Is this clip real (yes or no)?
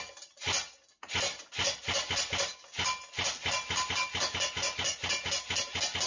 yes